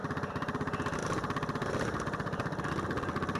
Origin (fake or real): real